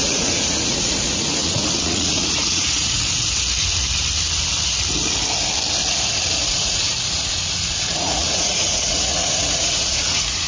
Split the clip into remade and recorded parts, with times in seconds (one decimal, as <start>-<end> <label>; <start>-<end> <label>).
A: 0.0-3.0 remade; 3.0-6.5 recorded; 6.5-10.5 remade